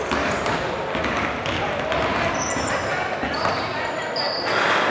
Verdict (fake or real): real